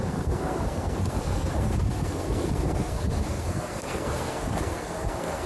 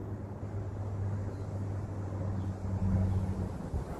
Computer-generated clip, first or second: first